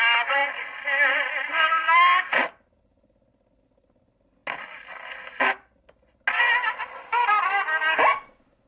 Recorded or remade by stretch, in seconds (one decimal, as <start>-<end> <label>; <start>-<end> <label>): 0.0-8.7 recorded